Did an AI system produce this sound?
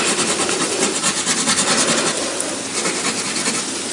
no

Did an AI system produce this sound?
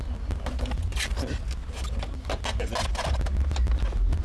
no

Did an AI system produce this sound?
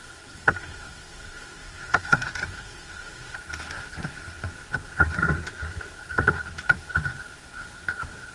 yes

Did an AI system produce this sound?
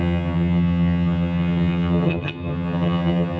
yes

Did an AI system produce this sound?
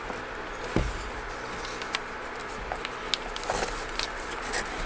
no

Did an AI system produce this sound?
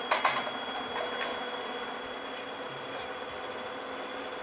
no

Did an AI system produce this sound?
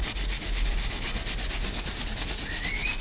no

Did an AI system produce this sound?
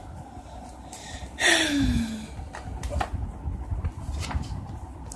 no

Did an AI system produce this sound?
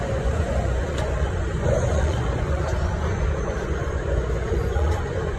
yes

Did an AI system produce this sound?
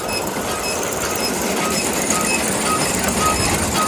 no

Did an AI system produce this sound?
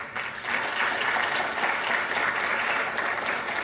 no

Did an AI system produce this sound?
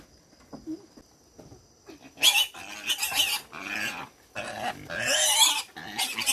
no